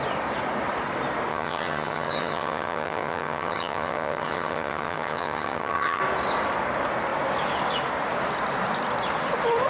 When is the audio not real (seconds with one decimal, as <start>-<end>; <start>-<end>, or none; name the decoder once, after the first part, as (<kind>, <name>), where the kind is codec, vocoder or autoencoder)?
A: 1.3-6.0 (vocoder, HiFi-GAN)